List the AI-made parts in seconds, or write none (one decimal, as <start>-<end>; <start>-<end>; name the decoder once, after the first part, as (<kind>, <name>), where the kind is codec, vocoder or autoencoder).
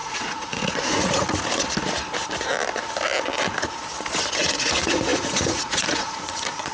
0.0-1.3 (vocoder, Vocos); 4.3-6.7